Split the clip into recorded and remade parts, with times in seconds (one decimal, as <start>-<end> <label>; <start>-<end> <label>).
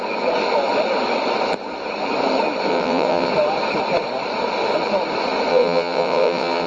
0.0-2.7 recorded; 2.7-3.3 remade; 3.3-5.5 recorded; 5.5-6.7 remade